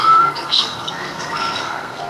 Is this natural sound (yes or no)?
no